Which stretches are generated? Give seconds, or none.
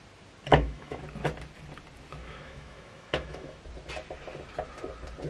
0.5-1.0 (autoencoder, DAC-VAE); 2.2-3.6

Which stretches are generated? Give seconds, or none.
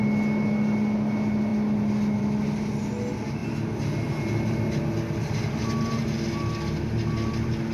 none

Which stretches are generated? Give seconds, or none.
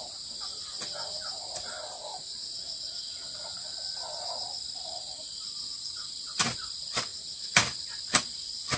none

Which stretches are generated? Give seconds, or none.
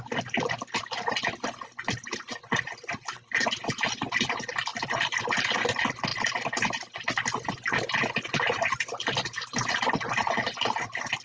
0.0-6.1 (vocoder, BigVGAN v2); 7.0-11.2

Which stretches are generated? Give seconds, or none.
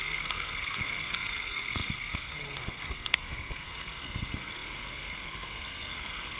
0.0-6.4 (codec, SNAC)